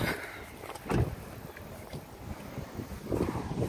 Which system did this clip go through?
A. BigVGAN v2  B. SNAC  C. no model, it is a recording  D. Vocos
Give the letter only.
C